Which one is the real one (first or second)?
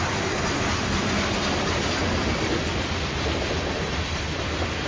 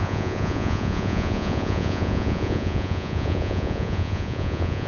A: first